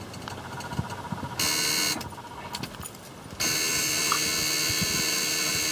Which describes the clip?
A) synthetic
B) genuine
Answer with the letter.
B